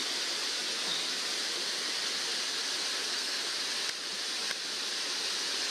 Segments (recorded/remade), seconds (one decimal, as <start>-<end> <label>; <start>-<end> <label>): 0.0-3.0 recorded; 3.0-3.5 remade; 3.5-5.7 recorded